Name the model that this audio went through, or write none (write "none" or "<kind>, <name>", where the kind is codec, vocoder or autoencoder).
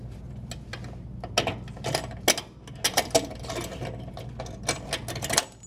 none